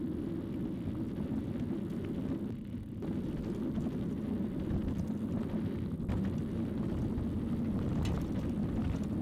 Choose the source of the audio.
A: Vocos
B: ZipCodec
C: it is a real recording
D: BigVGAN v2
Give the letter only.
C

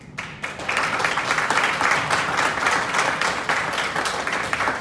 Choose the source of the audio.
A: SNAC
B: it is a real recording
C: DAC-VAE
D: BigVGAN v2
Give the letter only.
B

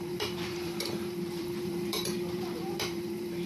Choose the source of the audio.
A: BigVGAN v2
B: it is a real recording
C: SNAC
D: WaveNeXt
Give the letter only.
A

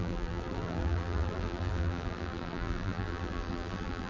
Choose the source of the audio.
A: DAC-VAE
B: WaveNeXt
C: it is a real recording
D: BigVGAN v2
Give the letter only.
D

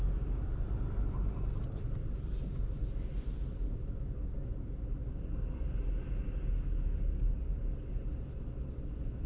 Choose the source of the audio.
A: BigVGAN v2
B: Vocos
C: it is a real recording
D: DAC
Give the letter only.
C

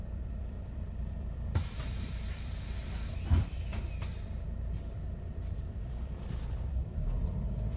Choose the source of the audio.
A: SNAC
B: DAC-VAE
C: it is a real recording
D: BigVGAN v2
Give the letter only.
D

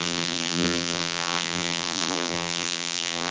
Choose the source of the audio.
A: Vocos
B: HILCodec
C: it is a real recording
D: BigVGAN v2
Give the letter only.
D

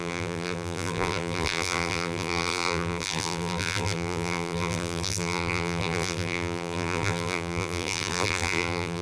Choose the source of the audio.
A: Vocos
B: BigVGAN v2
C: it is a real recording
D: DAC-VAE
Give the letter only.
B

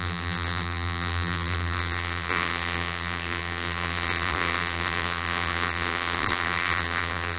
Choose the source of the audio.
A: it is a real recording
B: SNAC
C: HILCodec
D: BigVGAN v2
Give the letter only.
D